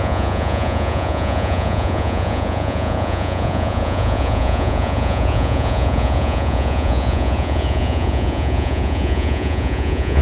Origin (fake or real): fake